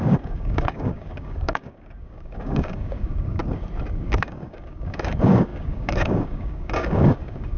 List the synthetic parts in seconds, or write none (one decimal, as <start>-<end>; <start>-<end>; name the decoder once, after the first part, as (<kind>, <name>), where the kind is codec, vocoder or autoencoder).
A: 0.0-3.4 (codec, DAC); 3.9-7.6